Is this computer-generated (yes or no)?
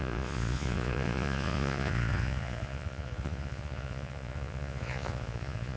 yes